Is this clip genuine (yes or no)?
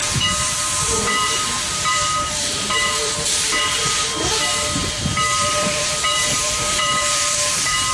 no